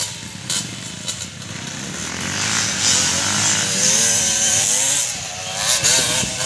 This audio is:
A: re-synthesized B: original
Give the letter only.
B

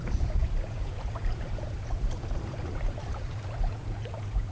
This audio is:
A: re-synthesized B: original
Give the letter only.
A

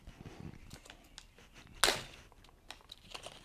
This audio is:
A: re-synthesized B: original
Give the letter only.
B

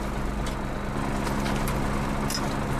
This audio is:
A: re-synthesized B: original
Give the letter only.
B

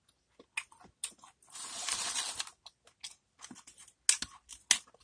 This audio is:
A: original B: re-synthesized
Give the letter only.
A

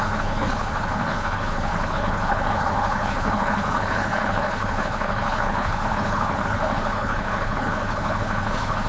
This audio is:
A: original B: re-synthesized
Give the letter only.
B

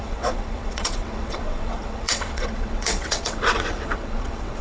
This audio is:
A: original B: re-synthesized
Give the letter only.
B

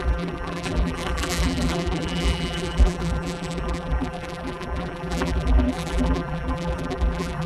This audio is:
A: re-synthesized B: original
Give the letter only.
A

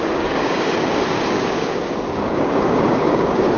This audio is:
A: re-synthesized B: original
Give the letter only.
A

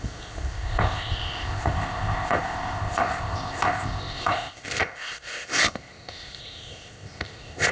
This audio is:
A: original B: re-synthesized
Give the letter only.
B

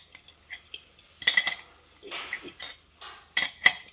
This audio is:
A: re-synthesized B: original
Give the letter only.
B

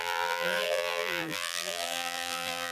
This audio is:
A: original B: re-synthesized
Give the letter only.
B